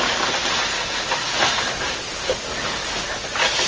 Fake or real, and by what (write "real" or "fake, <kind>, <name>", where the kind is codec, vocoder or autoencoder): fake, vocoder, BigVGAN v2